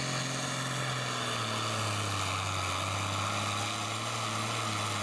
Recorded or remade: recorded